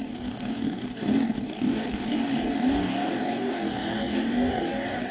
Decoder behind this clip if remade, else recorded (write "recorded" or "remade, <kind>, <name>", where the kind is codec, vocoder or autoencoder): remade, codec, DAC